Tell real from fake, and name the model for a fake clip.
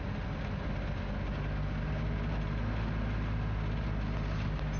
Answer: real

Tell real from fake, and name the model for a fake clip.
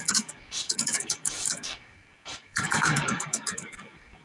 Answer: fake, codec, DAC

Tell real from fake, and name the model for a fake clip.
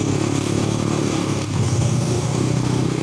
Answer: fake, codec, DAC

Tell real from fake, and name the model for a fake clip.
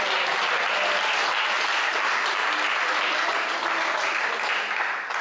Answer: real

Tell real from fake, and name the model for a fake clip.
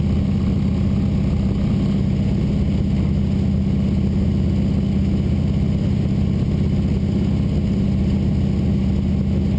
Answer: real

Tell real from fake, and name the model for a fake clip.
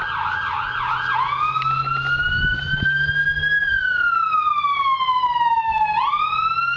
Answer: real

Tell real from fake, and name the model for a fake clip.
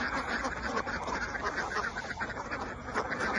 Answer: real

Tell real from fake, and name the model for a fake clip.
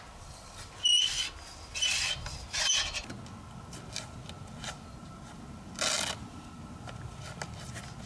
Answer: real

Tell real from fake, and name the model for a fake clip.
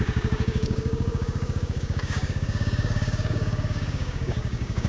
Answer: fake, codec, DAC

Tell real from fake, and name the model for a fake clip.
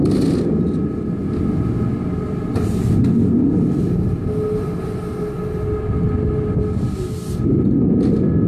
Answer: real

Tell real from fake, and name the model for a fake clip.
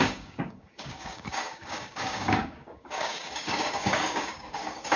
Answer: fake, codec, DAC